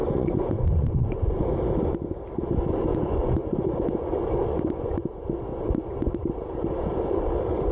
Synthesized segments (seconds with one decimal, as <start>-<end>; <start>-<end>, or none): 0.0-1.4; 2.9-4.9; 5.5-6.1